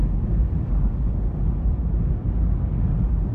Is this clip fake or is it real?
real